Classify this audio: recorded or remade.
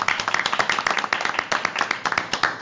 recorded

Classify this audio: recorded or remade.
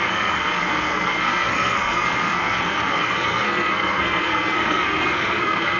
remade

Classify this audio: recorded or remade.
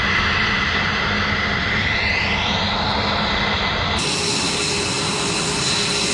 recorded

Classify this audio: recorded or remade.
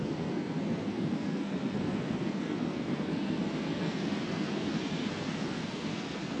remade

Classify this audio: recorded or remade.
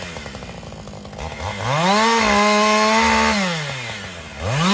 recorded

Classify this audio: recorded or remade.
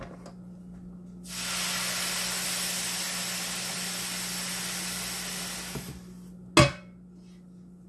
recorded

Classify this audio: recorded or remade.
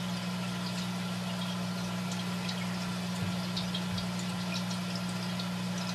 recorded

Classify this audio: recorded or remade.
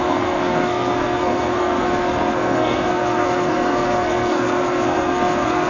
remade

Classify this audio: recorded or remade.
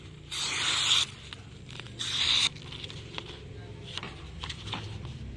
recorded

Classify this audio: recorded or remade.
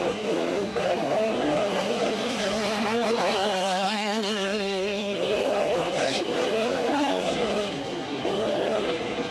remade